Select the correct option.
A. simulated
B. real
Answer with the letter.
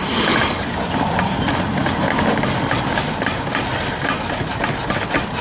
B